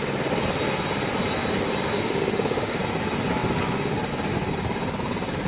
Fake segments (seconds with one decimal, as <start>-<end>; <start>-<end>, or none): 1.9-2.8